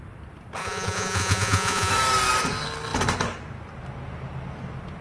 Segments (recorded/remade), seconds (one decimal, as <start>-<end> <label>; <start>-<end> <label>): 0.0-0.6 recorded; 0.6-1.9 remade; 1.9-5.0 recorded